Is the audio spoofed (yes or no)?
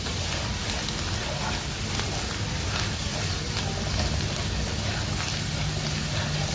no